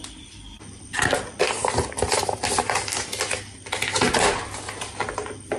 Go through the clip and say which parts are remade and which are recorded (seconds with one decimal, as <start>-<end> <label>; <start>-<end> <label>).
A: 0.0-5.6 recorded